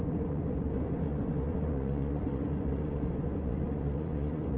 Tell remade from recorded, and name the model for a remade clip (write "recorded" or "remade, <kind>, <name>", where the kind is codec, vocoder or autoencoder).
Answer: remade, vocoder, Vocos